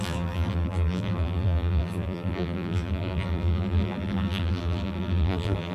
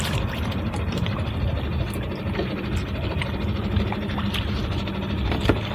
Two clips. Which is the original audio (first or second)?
second